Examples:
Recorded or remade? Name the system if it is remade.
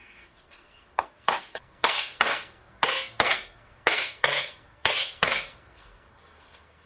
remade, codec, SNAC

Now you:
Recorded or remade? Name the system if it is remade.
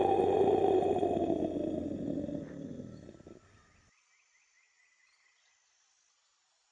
recorded